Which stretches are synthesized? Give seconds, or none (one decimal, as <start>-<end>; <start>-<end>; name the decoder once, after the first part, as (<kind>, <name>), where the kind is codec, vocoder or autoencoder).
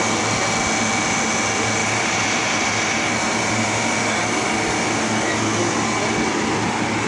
1.8-3.5 (vocoder, BigVGAN v2)